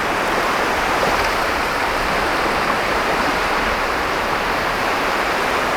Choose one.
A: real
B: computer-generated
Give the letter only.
B